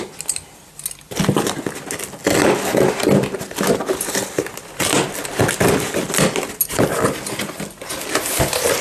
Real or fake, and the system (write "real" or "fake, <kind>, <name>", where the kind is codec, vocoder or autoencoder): real